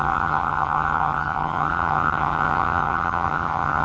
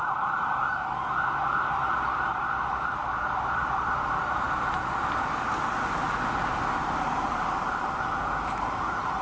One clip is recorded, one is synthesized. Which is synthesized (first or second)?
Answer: first